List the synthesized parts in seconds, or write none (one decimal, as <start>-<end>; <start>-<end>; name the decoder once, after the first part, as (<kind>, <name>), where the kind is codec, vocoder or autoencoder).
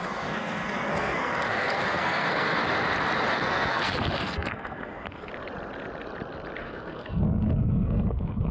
0.0-2.6 (codec, SNAC); 3.3-5.3; 6.6-8.5